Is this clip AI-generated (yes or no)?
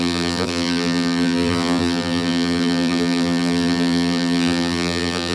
yes